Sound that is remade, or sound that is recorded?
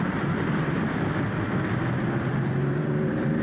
remade